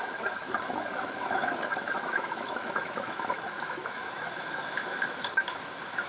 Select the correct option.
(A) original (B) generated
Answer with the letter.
B